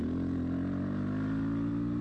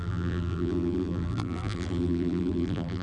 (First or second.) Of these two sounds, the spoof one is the second